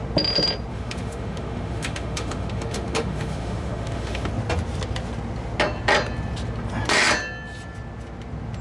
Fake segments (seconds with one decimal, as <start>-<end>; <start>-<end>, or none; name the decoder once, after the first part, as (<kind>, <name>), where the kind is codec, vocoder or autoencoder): 0.7-4.3 (autoencoder, DAC-VAE)